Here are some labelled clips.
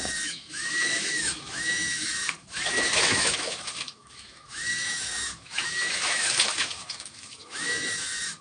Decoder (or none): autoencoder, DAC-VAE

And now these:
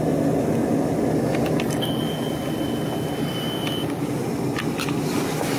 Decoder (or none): none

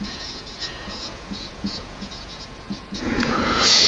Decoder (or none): vocoder, Vocos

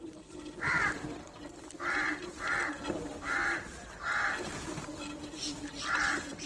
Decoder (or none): vocoder, BigVGAN v2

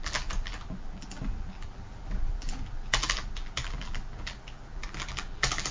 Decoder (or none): vocoder, BigVGAN v2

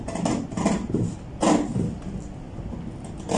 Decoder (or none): none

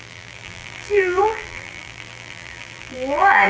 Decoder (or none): vocoder, BigVGAN v2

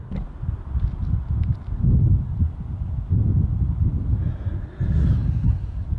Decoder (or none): none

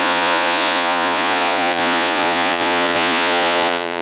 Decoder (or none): vocoder, Vocos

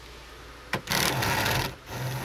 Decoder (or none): none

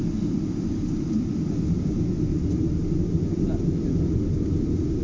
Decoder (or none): none